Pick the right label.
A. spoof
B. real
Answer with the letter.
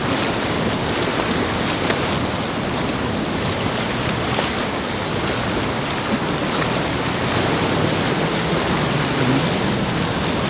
B